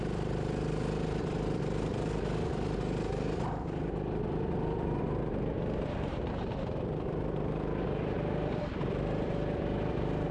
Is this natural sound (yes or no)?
yes